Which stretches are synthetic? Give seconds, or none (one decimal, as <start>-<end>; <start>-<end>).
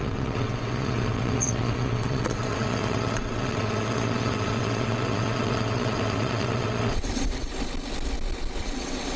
0.0-7.5; 8.6-9.2